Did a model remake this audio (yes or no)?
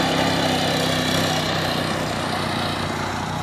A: no